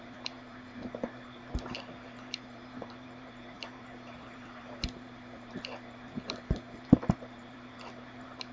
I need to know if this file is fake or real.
fake